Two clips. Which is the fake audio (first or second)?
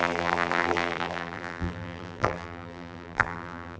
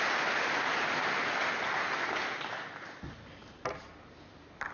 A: first